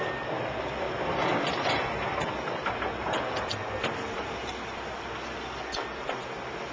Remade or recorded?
recorded